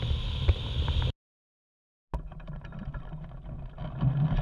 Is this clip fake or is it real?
real